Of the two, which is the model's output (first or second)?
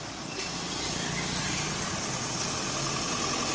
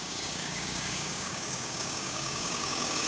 second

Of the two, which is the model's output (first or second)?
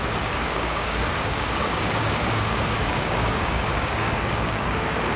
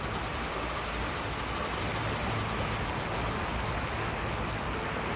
first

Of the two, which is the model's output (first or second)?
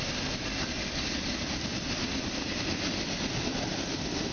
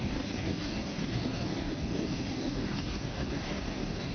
second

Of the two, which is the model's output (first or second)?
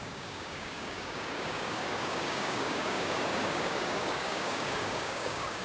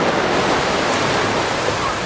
first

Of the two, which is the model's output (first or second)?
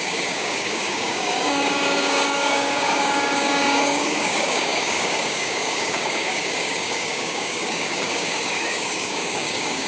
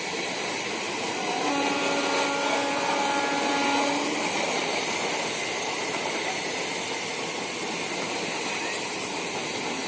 first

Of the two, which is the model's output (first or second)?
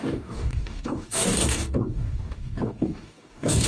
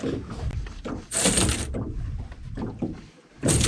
first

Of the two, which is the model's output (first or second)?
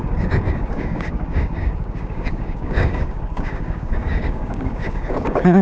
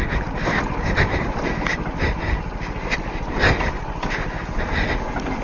first